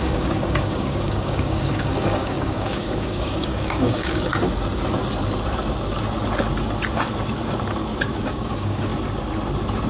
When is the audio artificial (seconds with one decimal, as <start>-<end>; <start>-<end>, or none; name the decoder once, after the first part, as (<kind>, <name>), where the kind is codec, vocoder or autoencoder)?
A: 0.0-4.3 (codec, DAC); 8.2-8.9